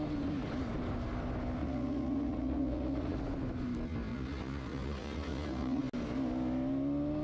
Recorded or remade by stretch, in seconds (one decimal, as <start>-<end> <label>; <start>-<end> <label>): 0.0-1.6 recorded; 1.6-3.2 remade; 3.2-4.1 recorded; 4.1-5.8 remade; 5.8-7.2 recorded